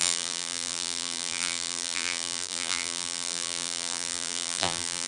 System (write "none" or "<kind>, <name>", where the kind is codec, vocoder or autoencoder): vocoder, BigVGAN v2